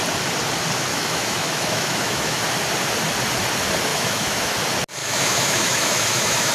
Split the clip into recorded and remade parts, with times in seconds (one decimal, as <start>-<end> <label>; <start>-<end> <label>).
0.0-0.9 recorded; 0.9-2.4 remade; 2.4-3.9 recorded; 3.9-4.6 remade; 4.6-5.0 recorded; 5.0-6.5 remade

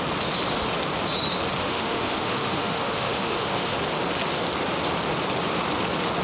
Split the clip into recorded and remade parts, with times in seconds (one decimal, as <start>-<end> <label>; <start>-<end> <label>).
0.0-1.6 recorded; 1.6-3.8 remade; 3.8-6.2 recorded